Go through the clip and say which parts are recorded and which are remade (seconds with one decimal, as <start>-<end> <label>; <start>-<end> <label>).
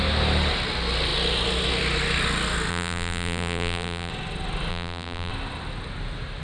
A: 0.0-2.7 recorded; 2.7-4.1 remade; 4.1-4.7 recorded; 4.7-5.3 remade; 5.3-6.4 recorded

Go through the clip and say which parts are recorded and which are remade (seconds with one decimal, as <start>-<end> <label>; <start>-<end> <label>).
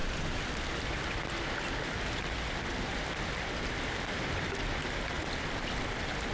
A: 0.0-6.3 recorded